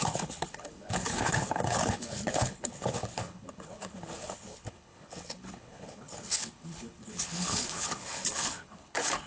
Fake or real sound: fake